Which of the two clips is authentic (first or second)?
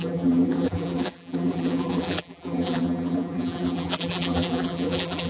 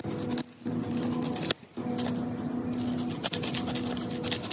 second